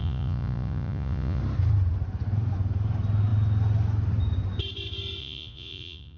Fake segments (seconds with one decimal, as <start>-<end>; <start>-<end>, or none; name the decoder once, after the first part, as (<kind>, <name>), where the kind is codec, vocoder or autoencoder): 0.0-1.4 (vocoder, Vocos); 5.2-6.2